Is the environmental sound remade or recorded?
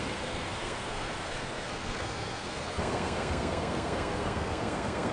remade